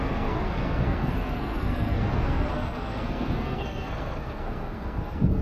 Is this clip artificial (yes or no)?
yes